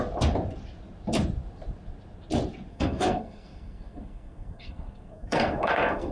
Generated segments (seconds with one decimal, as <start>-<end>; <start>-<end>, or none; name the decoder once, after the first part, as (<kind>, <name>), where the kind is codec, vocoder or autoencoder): 2.7-6.1 (codec, SNAC)